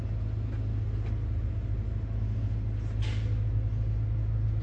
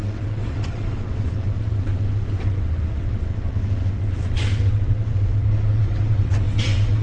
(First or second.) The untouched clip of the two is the first